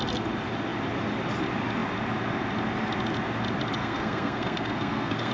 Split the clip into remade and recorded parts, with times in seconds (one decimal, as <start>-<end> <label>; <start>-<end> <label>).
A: 0.0-3.8 recorded; 3.8-5.3 remade